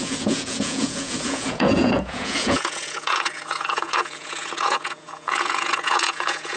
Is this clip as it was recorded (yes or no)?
no